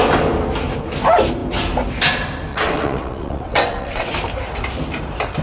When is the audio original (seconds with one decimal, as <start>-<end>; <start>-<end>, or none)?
0.0-2.5; 4.1-5.4